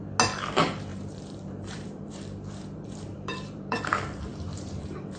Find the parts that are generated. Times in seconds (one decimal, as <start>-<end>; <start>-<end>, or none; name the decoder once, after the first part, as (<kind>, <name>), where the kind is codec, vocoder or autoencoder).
0.9-3.8 (vocoder, BigVGAN v2); 4.3-5.2